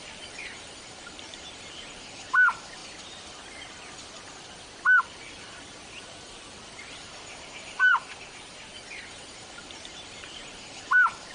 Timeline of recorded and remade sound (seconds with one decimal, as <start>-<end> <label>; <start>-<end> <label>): 0.0-2.8 remade; 2.8-5.0 recorded; 5.0-7.9 remade; 7.9-9.1 recorded; 9.1-11.3 remade